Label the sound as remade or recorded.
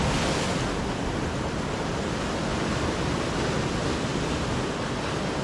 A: recorded